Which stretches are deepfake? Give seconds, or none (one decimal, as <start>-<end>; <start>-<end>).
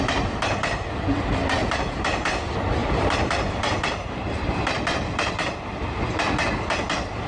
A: 1.6-2.4; 2.8-5.8